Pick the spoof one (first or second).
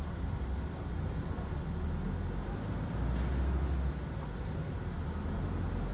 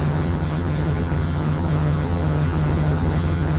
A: second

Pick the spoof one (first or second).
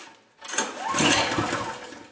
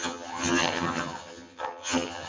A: second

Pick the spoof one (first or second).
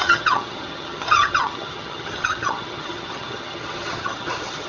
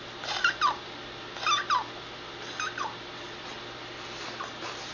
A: first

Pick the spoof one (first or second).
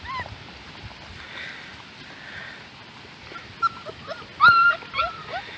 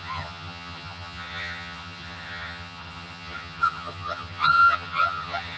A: second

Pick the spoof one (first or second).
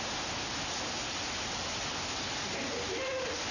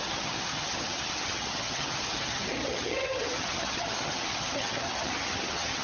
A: second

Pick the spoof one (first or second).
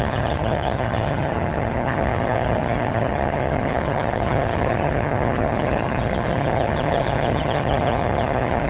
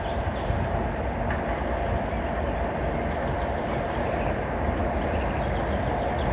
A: first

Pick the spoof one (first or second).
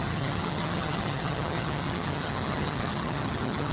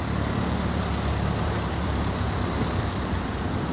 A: first